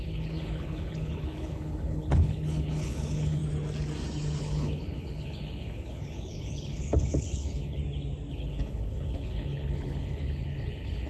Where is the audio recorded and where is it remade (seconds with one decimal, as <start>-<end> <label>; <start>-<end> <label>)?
0.0-3.4 remade; 3.4-4.4 recorded; 4.4-7.8 remade; 7.8-8.3 recorded; 8.3-11.1 remade